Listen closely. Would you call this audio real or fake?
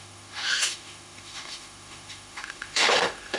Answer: fake